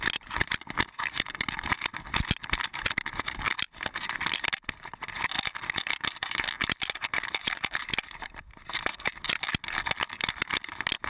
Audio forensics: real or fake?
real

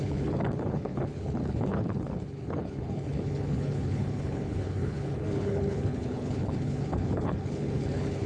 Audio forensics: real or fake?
fake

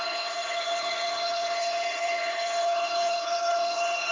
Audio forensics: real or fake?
fake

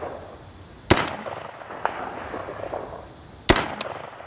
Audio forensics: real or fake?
real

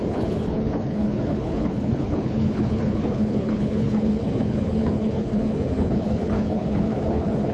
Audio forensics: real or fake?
fake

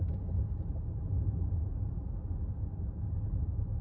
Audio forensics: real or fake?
real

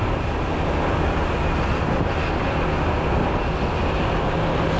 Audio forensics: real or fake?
real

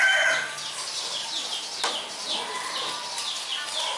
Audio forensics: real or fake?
real